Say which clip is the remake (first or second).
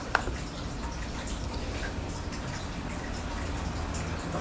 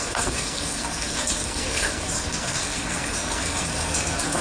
second